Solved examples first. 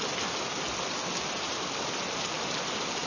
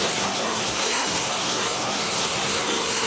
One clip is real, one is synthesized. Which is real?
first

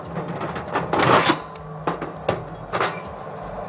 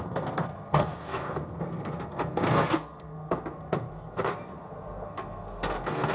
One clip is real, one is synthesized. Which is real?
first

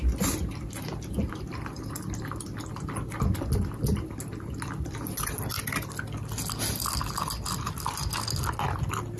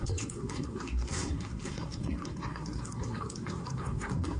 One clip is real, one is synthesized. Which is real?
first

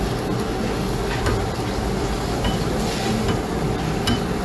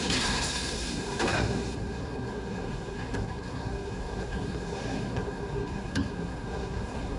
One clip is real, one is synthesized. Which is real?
first